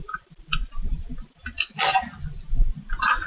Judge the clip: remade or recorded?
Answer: remade